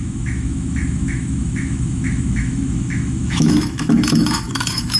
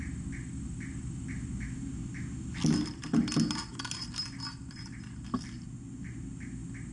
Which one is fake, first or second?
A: first